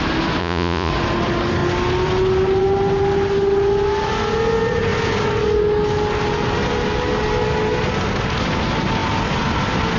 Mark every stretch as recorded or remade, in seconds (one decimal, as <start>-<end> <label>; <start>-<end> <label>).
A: 0.0-0.4 recorded; 0.4-0.9 remade; 0.9-10.0 recorded